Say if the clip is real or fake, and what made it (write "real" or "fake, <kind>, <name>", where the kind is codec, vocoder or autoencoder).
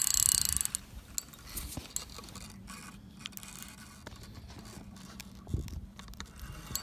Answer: real